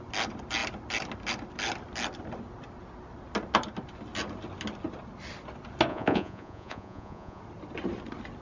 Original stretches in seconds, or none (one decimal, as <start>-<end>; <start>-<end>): 0.0-5.9; 7.4-8.4